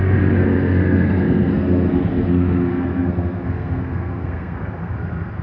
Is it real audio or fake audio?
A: fake